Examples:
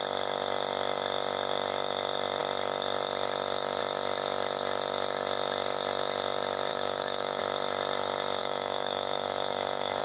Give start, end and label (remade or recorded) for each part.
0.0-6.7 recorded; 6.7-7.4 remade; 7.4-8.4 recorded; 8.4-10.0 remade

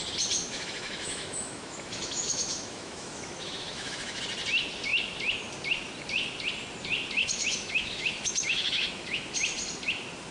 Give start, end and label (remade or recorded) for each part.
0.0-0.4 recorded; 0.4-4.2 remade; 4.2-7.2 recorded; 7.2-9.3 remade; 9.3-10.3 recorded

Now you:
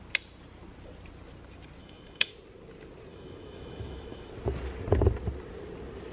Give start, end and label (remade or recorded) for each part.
0.0-1.8 recorded; 1.8-2.3 remade; 2.3-3.1 recorded; 3.1-4.3 remade; 4.3-6.1 recorded

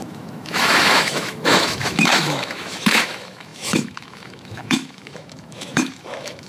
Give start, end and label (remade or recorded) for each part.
0.0-6.5 remade

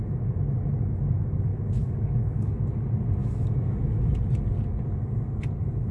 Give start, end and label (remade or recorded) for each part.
0.0-1.5 recorded; 1.5-2.5 remade; 2.5-3.2 recorded; 3.2-4.2 remade; 4.2-5.9 recorded

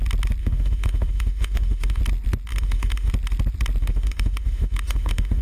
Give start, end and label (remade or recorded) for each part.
0.0-0.4 recorded; 0.4-2.0 remade; 2.0-2.5 recorded; 2.5-3.1 remade; 3.1-3.8 recorded; 3.8-5.4 remade

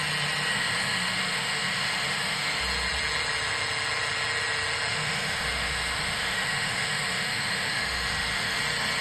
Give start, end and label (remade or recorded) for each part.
0.0-0.5 recorded; 0.5-2.6 remade; 2.6-4.9 recorded; 4.9-8.6 remade; 8.6-9.0 recorded